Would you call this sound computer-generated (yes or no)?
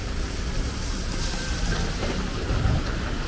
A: no